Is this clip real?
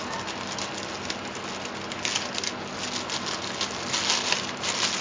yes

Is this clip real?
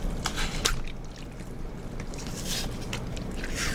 yes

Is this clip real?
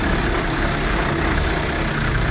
yes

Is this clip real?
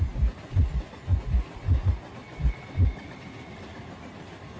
yes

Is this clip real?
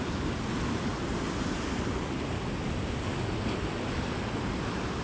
yes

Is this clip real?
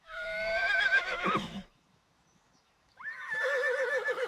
no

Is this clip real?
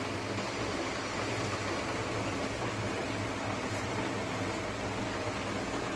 yes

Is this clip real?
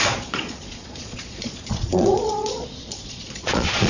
no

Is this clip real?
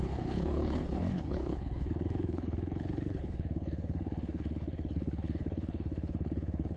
no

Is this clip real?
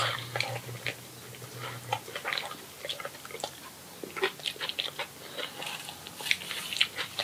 yes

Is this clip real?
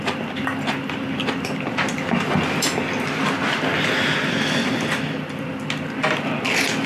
yes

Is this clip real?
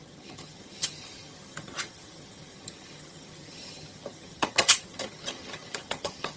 no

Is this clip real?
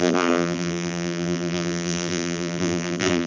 no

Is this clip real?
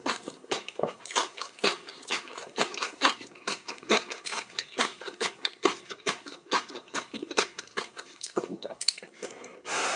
no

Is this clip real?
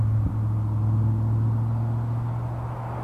yes